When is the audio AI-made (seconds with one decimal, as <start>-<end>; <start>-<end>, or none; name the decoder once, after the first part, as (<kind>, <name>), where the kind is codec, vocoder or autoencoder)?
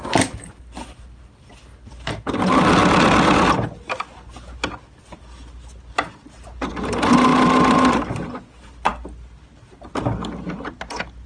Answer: none